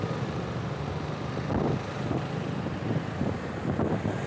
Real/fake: real